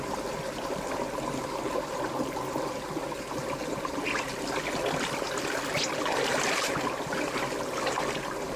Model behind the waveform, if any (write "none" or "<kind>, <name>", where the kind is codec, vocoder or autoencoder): none